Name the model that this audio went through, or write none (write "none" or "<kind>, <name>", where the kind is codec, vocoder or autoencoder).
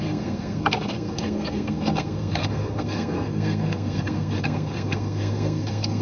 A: codec, SNAC